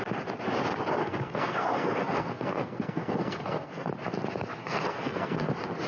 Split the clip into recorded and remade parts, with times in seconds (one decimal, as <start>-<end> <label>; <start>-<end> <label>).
0.0-1.0 recorded; 1.0-3.9 remade; 3.9-4.6 recorded; 4.6-5.5 remade; 5.5-5.9 recorded